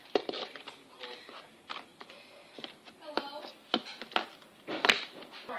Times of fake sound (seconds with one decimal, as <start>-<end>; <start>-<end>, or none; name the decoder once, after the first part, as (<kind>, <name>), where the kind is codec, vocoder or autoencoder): 0.0-0.6 (vocoder, BigVGAN v2)